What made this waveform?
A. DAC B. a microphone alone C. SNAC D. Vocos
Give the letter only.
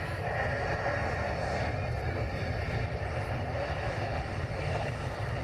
B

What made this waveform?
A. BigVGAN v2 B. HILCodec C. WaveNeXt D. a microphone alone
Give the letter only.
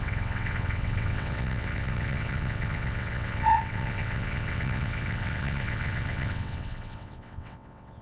C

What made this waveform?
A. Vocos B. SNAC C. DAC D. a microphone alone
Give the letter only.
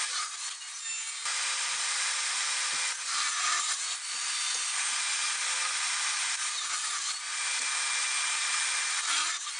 D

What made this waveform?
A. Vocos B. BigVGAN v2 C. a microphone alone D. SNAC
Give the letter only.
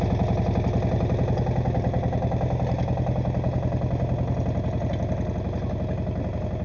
C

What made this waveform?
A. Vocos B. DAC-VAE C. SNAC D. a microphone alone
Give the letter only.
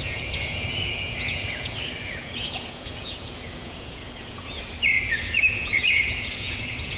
A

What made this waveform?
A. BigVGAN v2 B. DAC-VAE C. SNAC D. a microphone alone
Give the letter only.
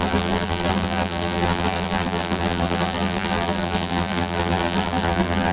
A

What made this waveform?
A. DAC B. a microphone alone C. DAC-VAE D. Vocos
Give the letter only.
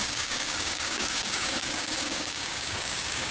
A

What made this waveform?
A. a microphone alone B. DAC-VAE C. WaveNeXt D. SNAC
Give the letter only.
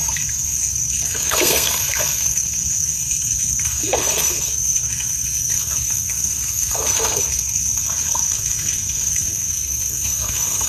D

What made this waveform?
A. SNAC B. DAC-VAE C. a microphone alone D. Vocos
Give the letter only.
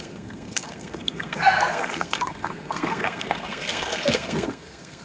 A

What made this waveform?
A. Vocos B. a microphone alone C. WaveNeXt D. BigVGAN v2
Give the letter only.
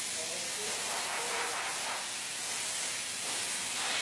B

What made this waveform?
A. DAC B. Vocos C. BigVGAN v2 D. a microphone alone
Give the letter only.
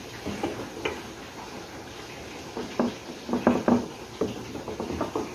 D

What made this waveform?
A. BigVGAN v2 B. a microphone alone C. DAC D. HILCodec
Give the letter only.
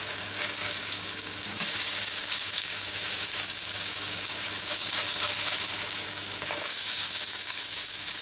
C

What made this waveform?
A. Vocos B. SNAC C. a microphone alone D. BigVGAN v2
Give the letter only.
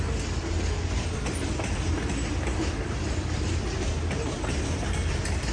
C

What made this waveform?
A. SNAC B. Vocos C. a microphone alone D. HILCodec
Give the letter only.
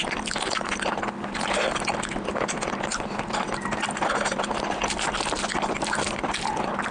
C